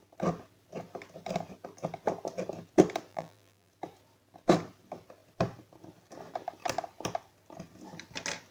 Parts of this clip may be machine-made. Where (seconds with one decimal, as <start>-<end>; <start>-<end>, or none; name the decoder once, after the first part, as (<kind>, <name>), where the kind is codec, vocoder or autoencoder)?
3.1-3.7 (vocoder, BigVGAN v2)